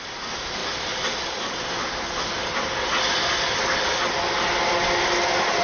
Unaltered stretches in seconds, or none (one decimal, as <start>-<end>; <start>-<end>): 0.0-5.6